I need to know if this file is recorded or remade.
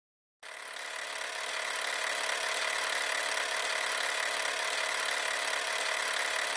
recorded